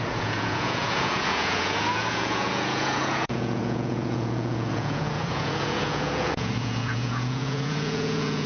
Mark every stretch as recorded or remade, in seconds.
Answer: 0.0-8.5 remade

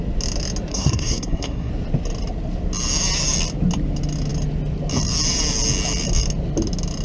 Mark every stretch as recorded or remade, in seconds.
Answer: 0.0-0.7 recorded; 0.7-1.7 remade; 1.7-7.0 recorded

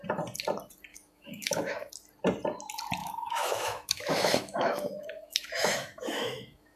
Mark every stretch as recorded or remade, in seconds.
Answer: 0.0-0.9 recorded; 0.9-1.9 remade; 1.9-3.0 recorded; 3.0-6.8 remade

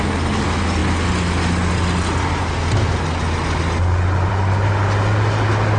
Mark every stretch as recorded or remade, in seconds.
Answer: 0.0-5.8 recorded

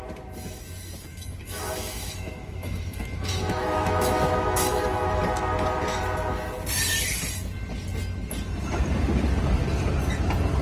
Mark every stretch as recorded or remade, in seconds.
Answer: 0.0-1.1 recorded; 1.1-5.2 remade; 5.2-10.6 recorded

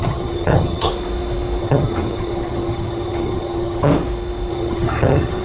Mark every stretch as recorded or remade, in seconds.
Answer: 0.0-0.9 remade; 0.9-1.6 recorded; 1.6-3.9 remade; 3.9-4.5 recorded; 4.5-5.4 remade